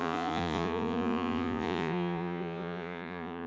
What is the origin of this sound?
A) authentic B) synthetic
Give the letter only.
B